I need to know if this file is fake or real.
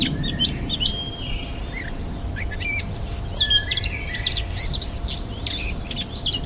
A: real